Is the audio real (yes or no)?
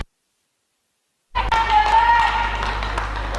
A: yes